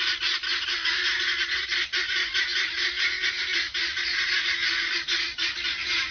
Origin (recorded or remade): recorded